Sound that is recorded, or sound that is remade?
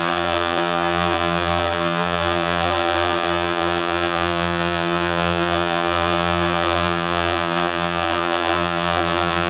remade